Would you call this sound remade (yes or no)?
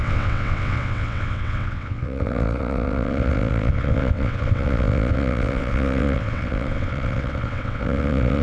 yes